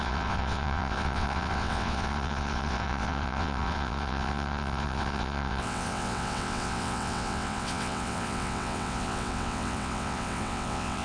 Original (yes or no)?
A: no